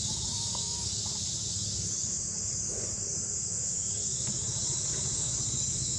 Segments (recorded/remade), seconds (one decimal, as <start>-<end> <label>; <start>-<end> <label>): 0.0-1.0 remade; 1.0-1.5 recorded; 1.5-6.0 remade